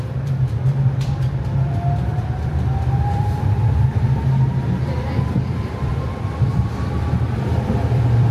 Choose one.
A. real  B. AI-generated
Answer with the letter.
B